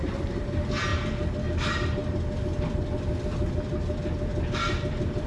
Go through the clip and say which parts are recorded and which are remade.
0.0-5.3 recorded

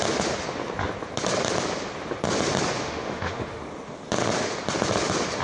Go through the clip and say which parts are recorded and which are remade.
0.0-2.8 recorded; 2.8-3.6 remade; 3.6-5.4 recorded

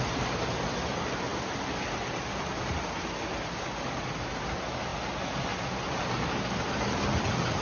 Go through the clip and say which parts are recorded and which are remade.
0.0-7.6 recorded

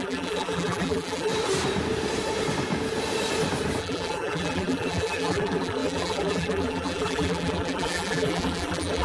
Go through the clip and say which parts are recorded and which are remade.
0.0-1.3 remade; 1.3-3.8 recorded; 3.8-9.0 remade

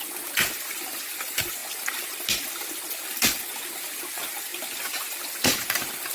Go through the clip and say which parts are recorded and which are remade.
0.0-4.5 recorded; 4.5-5.2 remade; 5.2-6.1 recorded

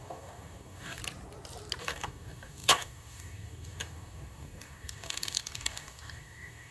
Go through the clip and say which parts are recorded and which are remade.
0.0-1.0 remade; 1.0-1.8 recorded; 1.8-6.7 remade

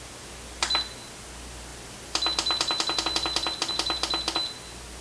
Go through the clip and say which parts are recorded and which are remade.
0.0-5.0 recorded

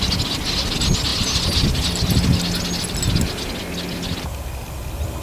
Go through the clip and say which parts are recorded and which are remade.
0.0-5.2 recorded